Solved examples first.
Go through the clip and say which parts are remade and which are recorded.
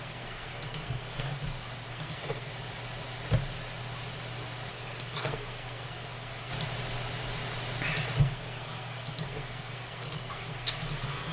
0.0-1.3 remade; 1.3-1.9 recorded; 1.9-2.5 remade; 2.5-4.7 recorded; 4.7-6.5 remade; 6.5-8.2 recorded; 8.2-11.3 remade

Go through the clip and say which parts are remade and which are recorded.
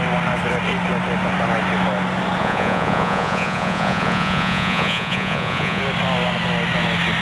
0.0-2.4 recorded; 2.4-5.8 remade; 5.8-7.2 recorded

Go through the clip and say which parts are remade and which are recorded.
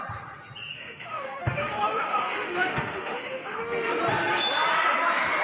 0.0-0.7 recorded; 0.7-3.9 remade; 3.9-5.4 recorded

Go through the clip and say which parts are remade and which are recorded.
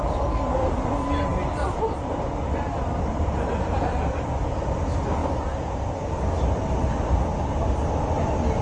0.0-8.6 recorded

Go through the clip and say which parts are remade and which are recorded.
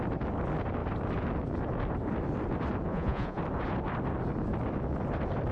0.0-2.9 recorded; 2.9-3.4 remade; 3.4-5.5 recorded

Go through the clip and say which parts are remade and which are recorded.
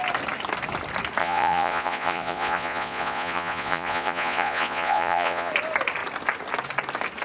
0.0-1.2 recorded; 1.2-5.5 remade; 5.5-7.2 recorded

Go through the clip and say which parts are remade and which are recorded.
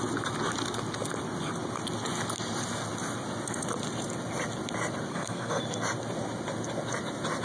0.0-5.1 recorded; 5.1-5.6 remade; 5.6-7.4 recorded